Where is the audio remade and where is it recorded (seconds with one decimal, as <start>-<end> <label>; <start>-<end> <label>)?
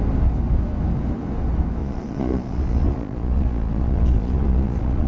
0.0-1.8 recorded; 1.8-5.1 remade